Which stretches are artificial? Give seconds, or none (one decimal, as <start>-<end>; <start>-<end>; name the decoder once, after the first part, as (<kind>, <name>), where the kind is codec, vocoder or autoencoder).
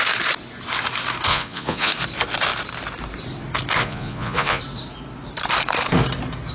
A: 1.3-1.9 (vocoder, Vocos); 3.8-4.6